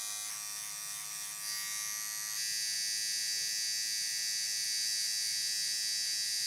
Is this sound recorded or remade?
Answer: recorded